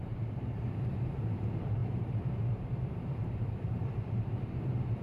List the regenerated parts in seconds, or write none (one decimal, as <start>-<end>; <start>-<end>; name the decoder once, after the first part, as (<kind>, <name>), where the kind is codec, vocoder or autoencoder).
0.0-5.0 (vocoder, BigVGAN v2)